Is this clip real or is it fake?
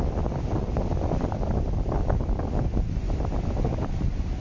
fake